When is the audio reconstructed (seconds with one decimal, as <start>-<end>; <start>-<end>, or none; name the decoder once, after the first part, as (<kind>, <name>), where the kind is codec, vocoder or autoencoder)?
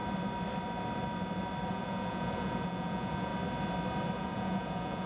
1.7-3.3 (vocoder, Vocos); 4.2-5.1